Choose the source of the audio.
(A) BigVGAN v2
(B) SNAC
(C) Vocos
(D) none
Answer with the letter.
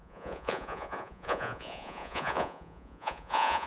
C